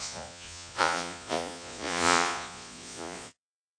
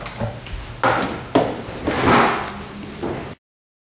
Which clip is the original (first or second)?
second